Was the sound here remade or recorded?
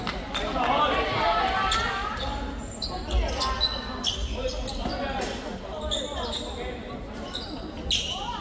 recorded